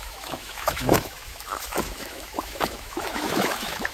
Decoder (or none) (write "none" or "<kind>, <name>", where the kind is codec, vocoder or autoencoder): autoencoder, DAC-VAE